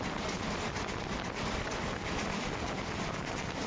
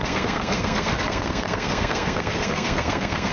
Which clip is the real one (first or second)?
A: first